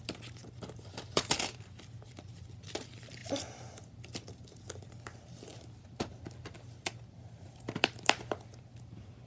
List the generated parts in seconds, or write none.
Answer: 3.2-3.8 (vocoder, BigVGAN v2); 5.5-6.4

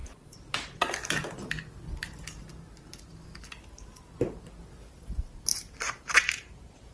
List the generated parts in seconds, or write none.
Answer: 0.0-0.8 (vocoder, BigVGAN v2); 5.5-6.9

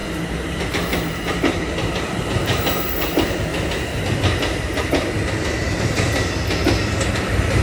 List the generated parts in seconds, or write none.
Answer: 0.7-3.5 (vocoder, BigVGAN v2); 7.1-7.6

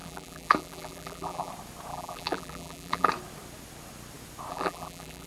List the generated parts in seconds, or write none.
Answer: 0.0-1.5 (vocoder, BigVGAN v2); 1.9-3.1; 4.5-5.3

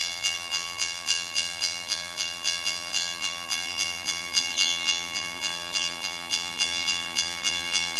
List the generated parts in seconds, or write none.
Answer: 0.0-8.0 (vocoder, BigVGAN v2)